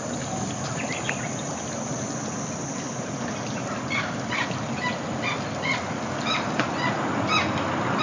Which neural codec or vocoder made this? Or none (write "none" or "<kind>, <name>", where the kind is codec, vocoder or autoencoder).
none